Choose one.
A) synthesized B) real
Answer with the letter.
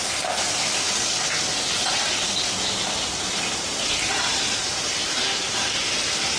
B